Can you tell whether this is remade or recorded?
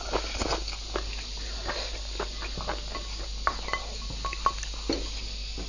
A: recorded